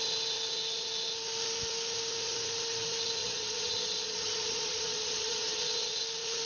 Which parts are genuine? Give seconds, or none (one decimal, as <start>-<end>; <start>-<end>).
0.0-3.2; 6.0-6.5